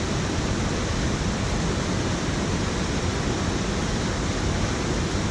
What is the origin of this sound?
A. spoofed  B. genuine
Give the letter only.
B